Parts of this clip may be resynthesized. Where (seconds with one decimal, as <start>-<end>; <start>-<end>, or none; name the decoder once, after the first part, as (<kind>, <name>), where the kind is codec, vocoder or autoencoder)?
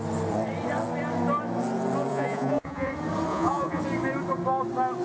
2.1-2.9 (vocoder, Vocos); 3.3-3.8